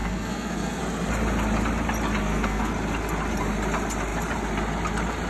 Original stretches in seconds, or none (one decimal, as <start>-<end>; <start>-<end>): 0.8-2.2; 2.7-5.3